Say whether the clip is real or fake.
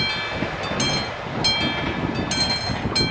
real